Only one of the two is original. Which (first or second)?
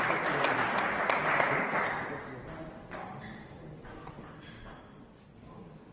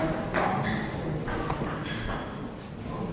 second